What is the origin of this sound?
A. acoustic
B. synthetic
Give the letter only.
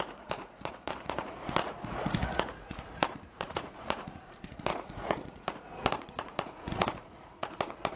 B